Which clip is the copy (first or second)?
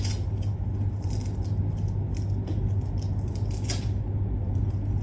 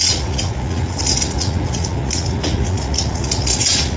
second